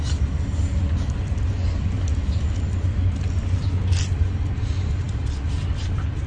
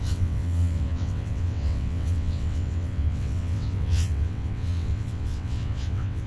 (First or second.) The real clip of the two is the first